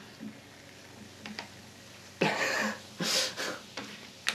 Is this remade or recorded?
recorded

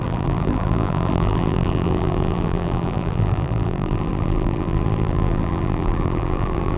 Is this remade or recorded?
remade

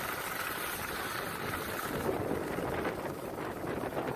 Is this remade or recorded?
recorded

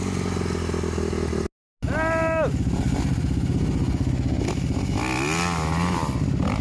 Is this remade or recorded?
recorded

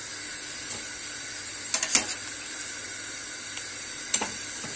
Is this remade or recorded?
recorded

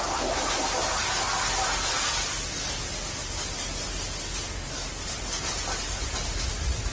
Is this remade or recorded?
recorded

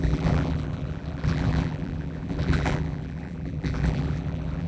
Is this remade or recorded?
remade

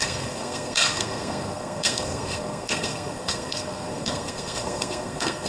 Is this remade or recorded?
remade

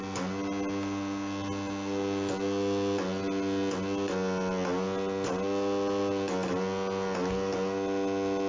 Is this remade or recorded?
recorded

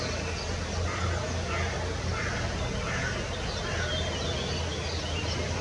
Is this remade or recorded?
recorded